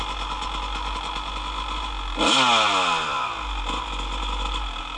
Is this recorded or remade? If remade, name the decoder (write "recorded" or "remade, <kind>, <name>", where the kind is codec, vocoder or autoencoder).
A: recorded